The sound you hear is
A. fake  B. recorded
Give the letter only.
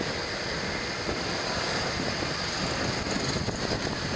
B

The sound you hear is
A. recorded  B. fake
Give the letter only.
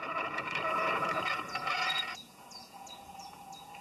B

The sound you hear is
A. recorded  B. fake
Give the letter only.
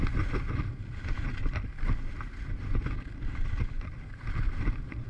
A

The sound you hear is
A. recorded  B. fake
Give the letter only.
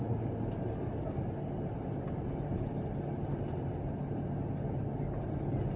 A